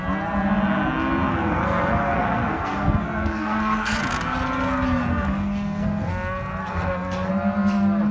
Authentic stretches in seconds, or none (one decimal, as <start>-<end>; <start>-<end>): 0.0-1.3; 4.0-5.1; 6.1-6.6; 7.3-8.1